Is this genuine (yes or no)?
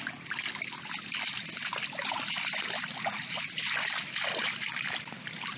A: yes